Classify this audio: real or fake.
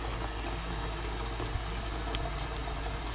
real